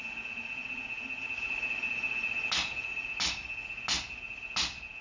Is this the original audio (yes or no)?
yes